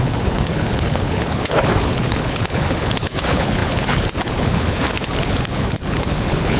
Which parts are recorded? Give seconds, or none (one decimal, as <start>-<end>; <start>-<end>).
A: none